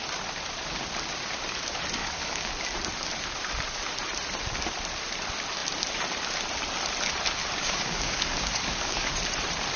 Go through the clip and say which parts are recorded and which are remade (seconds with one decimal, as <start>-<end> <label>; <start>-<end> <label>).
0.0-2.0 recorded; 2.0-2.5 remade; 2.5-7.4 recorded; 7.4-9.1 remade; 9.1-9.8 recorded